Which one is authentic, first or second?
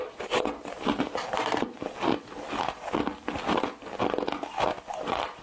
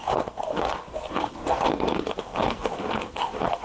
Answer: first